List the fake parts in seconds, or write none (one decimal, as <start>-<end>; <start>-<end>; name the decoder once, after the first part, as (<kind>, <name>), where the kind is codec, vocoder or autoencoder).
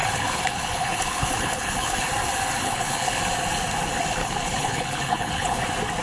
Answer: 0.0-2.1 (codec, HILCodec); 2.6-3.2; 4.2-5.6